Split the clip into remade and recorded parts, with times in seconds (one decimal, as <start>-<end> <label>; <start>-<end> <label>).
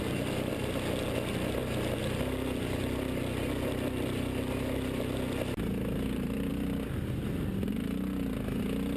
0.0-9.0 recorded